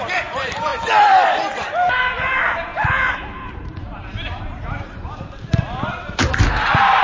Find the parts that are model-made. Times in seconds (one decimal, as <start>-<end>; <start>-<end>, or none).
0.0-0.7; 1.5-7.0